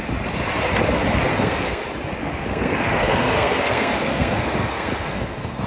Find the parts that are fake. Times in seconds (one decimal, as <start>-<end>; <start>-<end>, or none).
1.3-1.8; 2.2-5.7

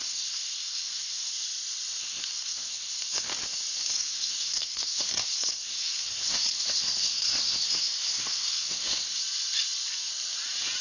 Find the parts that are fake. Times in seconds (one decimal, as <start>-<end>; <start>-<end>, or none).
0.0-1.3; 2.0-3.3; 3.9-9.2

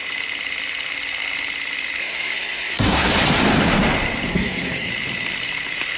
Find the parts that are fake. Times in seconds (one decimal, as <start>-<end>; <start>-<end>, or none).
2.0-3.1; 4.3-4.9

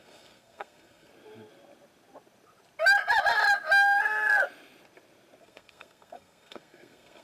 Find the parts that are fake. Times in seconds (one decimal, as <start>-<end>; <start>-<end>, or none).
0.0-1.1; 5.4-7.2